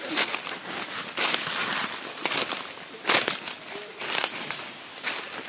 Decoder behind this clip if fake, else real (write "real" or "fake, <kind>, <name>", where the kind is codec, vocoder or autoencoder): real